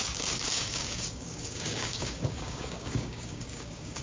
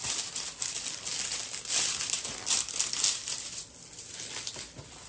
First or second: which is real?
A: second